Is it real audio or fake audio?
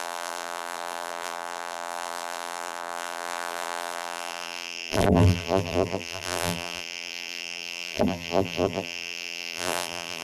fake